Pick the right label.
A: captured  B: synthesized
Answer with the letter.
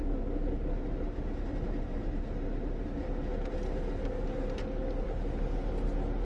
A